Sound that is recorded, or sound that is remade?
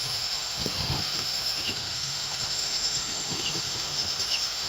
remade